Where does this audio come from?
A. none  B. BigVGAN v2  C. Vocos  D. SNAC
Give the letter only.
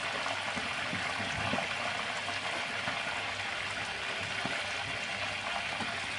A